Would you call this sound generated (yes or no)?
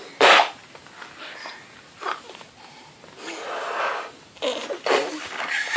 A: no